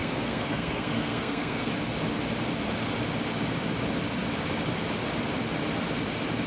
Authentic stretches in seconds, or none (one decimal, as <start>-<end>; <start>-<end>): 1.7-6.5